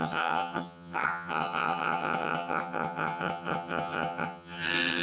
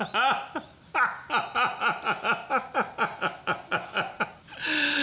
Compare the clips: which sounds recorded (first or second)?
second